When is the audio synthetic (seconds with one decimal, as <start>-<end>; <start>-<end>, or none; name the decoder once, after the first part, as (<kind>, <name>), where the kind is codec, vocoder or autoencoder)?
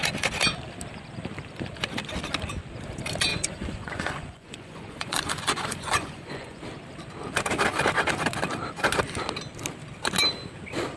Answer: 3.3-6.6 (vocoder, Vocos)